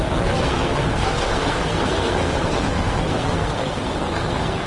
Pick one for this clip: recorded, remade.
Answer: remade